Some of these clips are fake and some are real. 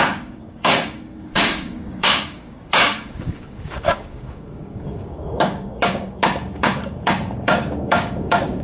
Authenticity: fake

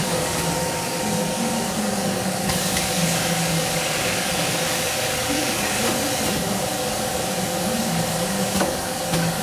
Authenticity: fake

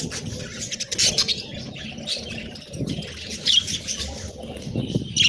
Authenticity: real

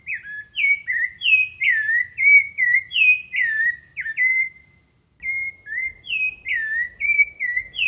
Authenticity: real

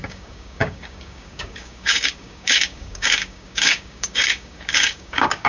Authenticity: fake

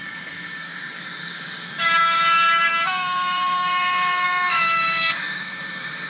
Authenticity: fake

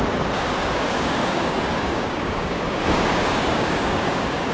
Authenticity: fake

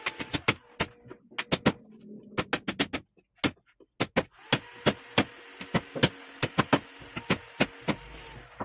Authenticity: real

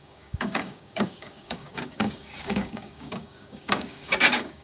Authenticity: fake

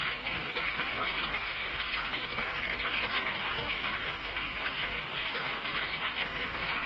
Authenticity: fake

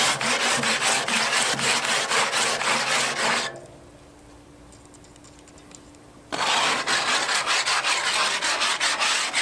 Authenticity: real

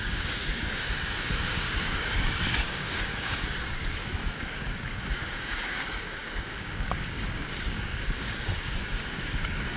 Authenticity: fake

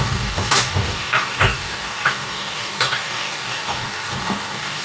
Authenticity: fake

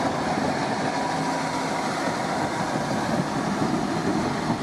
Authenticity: real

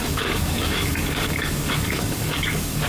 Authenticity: fake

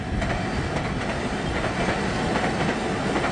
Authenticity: real